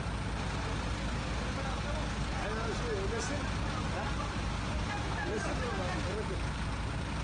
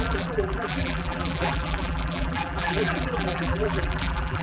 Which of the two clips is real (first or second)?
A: first